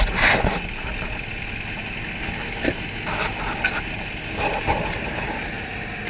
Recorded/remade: recorded